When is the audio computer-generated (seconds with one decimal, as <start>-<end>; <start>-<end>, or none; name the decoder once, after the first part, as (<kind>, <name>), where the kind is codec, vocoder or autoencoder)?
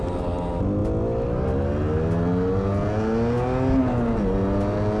none